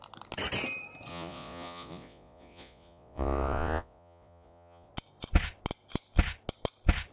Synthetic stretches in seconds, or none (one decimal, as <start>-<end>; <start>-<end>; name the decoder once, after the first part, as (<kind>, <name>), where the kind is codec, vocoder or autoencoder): 1.1-4.9 (vocoder, Vocos)

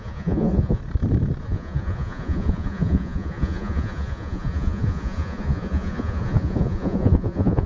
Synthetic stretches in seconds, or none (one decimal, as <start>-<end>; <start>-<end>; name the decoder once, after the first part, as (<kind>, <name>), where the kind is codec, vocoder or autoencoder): 0.0-0.8 (vocoder, Vocos); 1.4-7.7

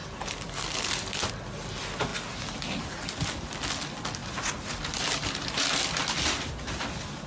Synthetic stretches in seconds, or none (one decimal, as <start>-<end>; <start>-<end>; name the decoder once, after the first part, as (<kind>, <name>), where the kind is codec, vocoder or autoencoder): none